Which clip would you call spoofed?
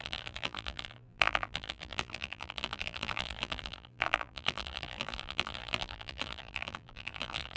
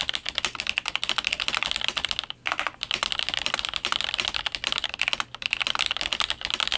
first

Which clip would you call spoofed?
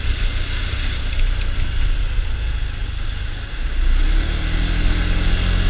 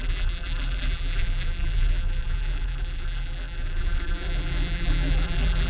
second